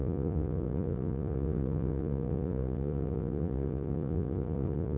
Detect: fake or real fake